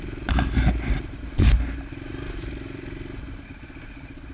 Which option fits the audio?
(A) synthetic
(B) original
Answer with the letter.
B